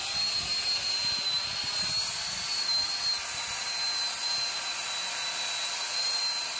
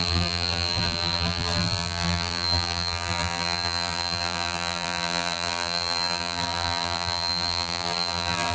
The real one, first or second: first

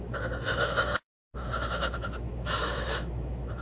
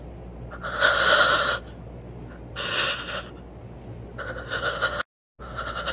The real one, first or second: second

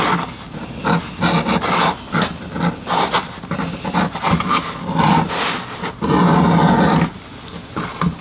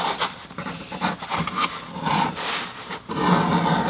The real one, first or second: first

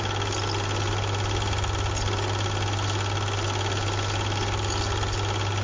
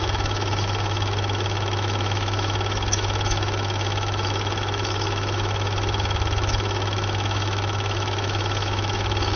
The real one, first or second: first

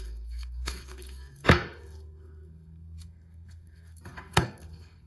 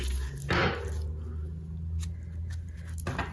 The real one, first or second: second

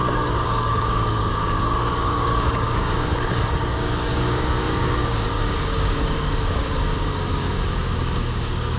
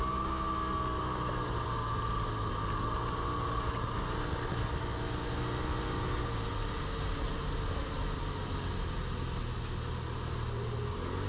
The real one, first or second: second